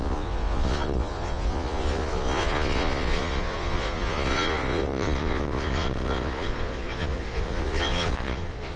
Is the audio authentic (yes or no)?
no